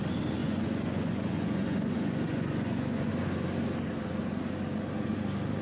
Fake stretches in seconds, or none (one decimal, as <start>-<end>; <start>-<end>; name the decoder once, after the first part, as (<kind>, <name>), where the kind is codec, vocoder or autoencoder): 0.4-3.1 (vocoder, Vocos)